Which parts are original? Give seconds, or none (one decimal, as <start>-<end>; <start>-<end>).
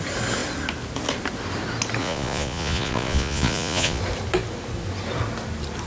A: 0.0-2.0; 4.0-5.9